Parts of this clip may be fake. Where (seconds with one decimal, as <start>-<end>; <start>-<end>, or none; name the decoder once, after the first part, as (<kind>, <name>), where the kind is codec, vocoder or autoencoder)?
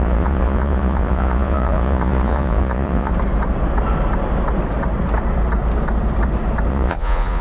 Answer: 0.0-3.1 (vocoder, Vocos); 6.7-7.4